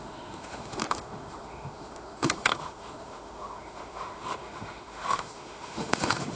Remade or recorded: remade